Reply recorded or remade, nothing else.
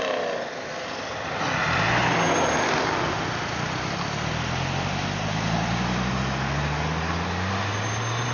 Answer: recorded